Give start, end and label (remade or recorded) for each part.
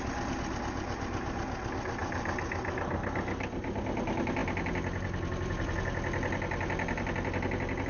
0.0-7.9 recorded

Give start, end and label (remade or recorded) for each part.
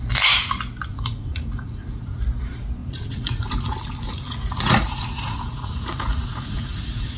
0.0-0.9 recorded; 0.9-2.2 remade; 2.2-2.8 recorded; 2.8-7.2 remade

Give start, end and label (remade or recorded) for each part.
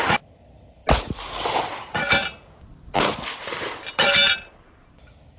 0.0-5.4 recorded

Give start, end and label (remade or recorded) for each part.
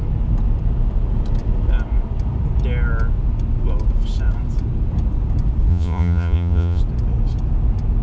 0.0-5.7 recorded; 5.7-6.8 remade; 6.8-8.0 recorded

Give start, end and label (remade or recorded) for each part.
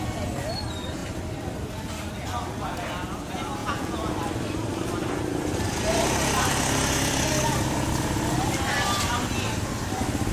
0.0-3.6 recorded; 3.6-4.1 remade; 4.1-10.3 recorded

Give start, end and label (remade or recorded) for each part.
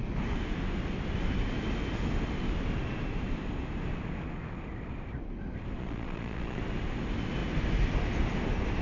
0.0-5.8 recorded; 5.8-6.6 remade; 6.6-8.8 recorded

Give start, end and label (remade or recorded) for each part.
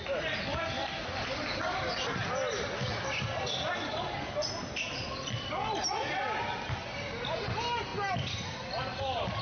0.0-9.4 recorded